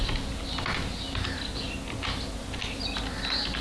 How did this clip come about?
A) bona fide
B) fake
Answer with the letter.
A